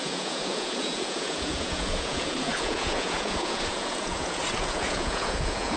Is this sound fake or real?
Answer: fake